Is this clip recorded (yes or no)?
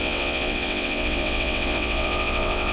no